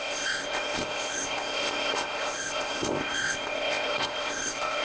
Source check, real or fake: fake